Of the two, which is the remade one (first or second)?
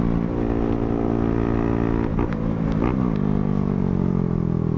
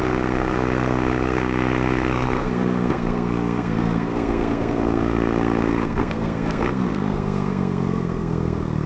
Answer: second